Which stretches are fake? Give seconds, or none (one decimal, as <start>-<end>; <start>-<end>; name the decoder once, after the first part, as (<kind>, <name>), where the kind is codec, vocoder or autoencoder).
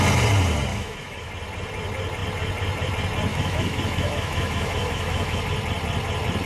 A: 0.7-1.3 (autoencoder, DAC-VAE); 3.3-5.4